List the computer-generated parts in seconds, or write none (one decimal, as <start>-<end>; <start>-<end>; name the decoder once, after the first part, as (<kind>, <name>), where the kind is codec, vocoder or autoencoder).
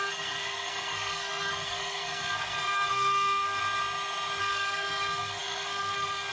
0.0-3.6 (codec, SNAC); 4.4-6.3